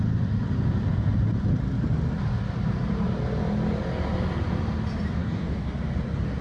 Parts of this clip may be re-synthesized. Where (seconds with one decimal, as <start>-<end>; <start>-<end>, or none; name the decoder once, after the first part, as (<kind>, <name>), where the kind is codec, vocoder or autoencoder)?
5.2-5.7 (codec, DAC)